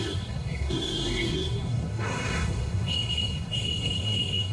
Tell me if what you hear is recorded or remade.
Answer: remade